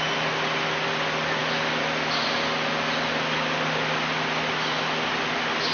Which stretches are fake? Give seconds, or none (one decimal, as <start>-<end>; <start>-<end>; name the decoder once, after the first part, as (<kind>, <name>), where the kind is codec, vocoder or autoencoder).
none